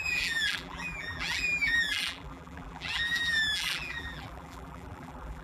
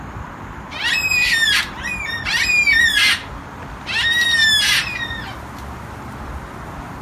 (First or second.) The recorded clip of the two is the second